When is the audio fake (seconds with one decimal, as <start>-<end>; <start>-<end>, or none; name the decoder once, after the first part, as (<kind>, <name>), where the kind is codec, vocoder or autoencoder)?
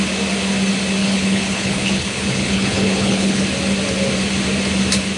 1.0-3.4 (codec, HILCodec)